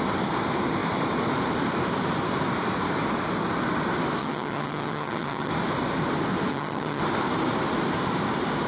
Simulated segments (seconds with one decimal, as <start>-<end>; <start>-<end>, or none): 4.2-5.5; 6.5-7.0